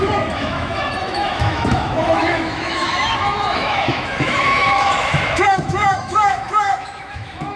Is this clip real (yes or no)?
no